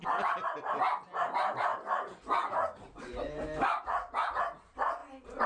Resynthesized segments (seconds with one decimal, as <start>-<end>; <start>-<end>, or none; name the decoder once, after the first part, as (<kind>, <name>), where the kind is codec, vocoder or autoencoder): 1.7-4.4 (vocoder, BigVGAN v2)